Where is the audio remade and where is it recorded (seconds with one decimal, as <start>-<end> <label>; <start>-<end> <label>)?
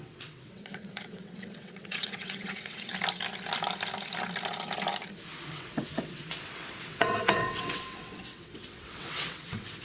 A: 0.0-2.9 remade; 2.9-5.5 recorded; 5.5-9.8 remade